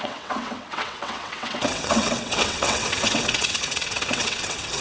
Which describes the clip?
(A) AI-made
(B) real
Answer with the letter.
A